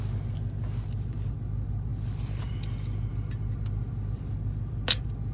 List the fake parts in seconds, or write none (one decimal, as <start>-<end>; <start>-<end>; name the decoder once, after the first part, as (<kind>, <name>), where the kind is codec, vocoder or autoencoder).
none